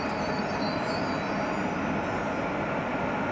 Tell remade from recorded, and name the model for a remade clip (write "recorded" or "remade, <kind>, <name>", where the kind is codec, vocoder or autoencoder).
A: recorded